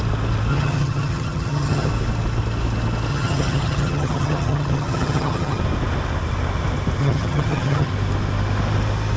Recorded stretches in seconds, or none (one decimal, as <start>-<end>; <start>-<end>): 0.0-0.5; 1.9-3.1; 5.6-7.0; 7.9-9.2